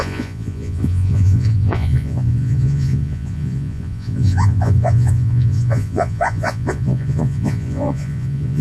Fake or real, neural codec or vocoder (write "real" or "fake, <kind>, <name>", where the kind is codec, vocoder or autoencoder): fake, vocoder, Vocos